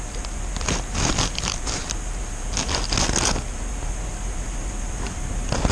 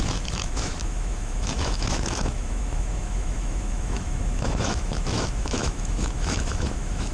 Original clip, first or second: first